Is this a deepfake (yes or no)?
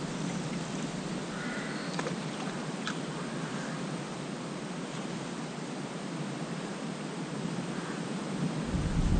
yes